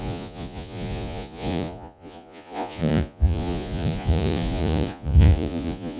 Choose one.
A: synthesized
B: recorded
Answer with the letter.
A